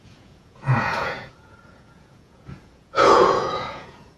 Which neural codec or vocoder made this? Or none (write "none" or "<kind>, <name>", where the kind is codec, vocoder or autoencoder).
vocoder, Vocos